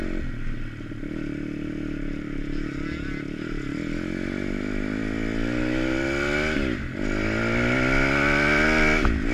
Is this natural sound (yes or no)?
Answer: yes